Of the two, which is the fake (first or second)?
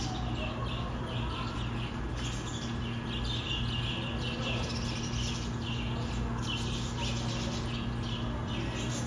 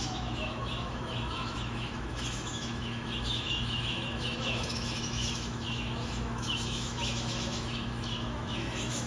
second